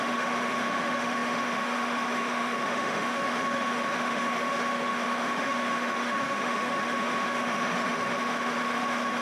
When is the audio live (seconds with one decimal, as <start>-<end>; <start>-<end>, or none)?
none